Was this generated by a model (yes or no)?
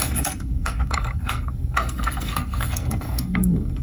yes